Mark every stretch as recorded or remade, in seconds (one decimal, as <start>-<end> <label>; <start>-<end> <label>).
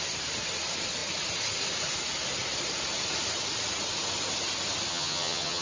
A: 0.0-4.9 recorded; 4.9-5.6 remade